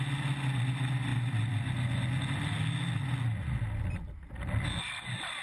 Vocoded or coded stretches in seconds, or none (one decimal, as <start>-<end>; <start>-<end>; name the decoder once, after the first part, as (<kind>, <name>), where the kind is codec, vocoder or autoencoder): none